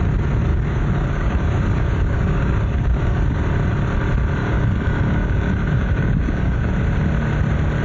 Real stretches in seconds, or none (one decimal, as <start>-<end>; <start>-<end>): 0.0-0.5; 3.4-4.4; 6.7-7.8